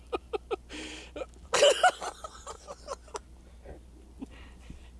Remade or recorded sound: recorded